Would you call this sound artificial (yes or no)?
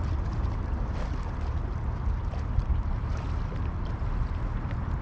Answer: no